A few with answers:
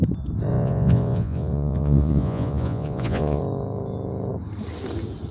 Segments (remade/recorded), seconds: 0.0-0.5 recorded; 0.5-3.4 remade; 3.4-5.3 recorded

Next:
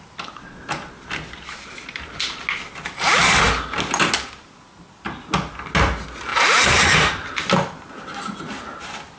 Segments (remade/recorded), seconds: 0.0-9.2 recorded

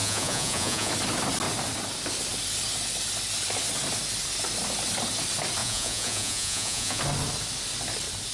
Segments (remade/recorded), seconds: 0.0-0.9 remade; 0.9-5.6 recorded; 5.6-7.0 remade; 7.0-8.3 recorded

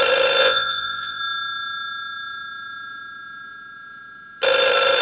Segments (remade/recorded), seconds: 0.0-0.4 recorded; 0.4-1.2 remade; 1.2-5.0 recorded

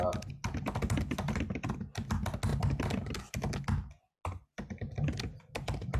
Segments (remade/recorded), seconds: 0.0-6.0 recorded